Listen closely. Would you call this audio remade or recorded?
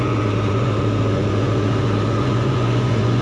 remade